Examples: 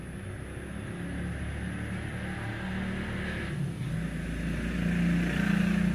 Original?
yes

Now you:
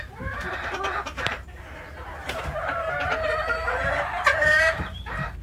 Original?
no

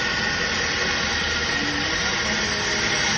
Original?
yes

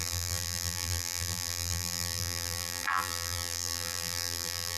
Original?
no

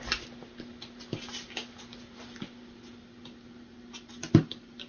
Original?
yes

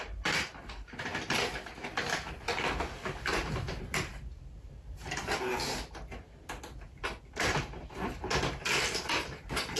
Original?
yes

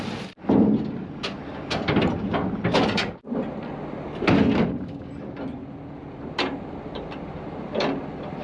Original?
yes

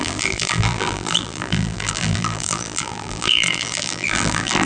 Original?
no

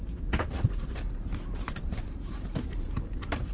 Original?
no